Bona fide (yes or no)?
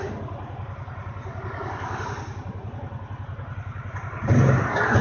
yes